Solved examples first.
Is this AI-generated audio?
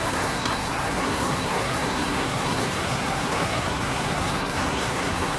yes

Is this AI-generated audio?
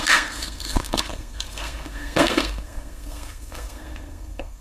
yes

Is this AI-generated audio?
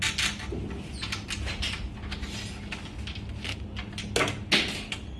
no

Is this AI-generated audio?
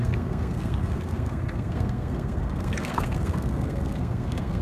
yes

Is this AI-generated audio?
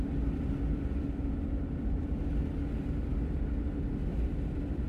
no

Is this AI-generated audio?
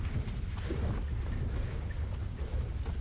no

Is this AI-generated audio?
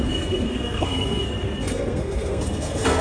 yes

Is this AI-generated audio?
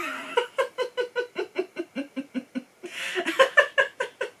no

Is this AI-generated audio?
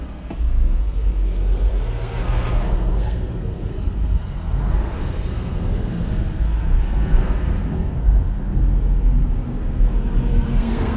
yes